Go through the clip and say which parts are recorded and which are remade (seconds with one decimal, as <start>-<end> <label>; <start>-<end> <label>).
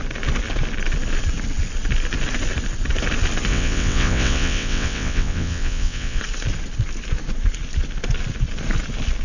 0.0-3.5 recorded; 3.5-6.2 remade; 6.2-9.2 recorded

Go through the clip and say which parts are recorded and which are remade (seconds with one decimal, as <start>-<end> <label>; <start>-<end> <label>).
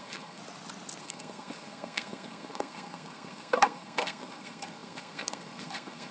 0.0-0.4 remade; 0.4-1.0 recorded; 1.0-6.1 remade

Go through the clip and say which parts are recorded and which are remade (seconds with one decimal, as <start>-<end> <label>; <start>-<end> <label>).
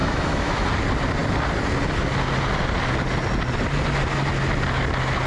0.0-0.7 remade; 0.7-5.3 recorded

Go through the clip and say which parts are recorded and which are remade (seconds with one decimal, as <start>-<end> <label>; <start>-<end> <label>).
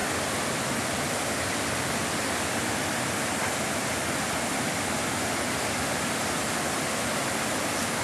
0.0-8.0 recorded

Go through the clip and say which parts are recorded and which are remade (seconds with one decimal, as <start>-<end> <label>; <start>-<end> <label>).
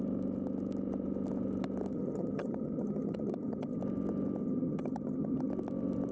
0.0-1.9 recorded; 1.9-3.8 remade; 3.8-4.4 recorded; 4.4-5.5 remade; 5.5-6.1 recorded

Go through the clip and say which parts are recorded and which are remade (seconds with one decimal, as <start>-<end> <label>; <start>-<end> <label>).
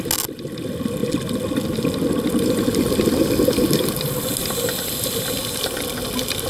0.0-6.5 recorded